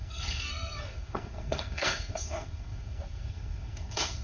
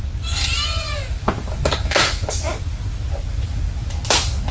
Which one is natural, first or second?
second